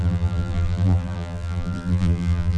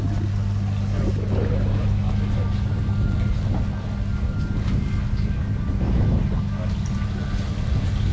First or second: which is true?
second